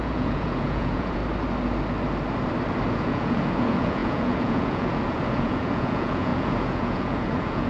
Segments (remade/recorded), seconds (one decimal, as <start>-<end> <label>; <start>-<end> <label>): 0.0-1.2 remade; 1.2-2.9 recorded; 2.9-7.7 remade